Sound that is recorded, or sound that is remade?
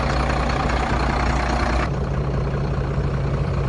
recorded